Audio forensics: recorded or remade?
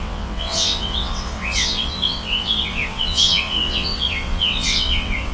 remade